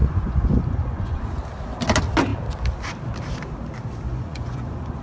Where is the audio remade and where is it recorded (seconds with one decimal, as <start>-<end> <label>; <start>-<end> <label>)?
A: 0.0-1.2 remade; 1.2-4.1 recorded; 4.1-5.0 remade